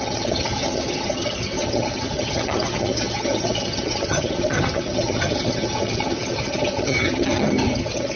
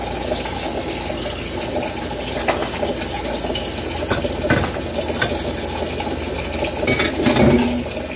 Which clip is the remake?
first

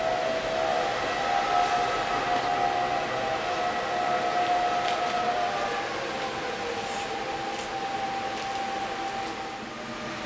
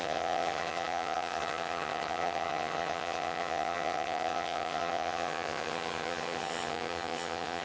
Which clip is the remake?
second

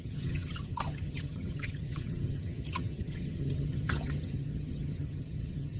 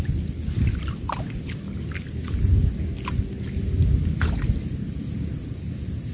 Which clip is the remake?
first